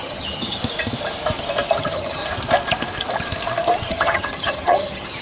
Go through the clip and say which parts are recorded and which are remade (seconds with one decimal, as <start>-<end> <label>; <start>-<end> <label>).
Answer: 0.0-0.6 remade; 0.6-1.8 recorded; 1.8-2.2 remade; 2.2-3.9 recorded; 3.9-5.2 remade